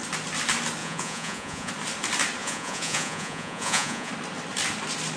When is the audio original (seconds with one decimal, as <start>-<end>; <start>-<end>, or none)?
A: 0.0-0.8; 1.7-2.4; 4.1-5.2